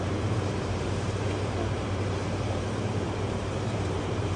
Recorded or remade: remade